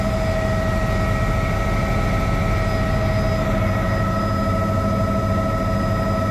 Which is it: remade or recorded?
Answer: recorded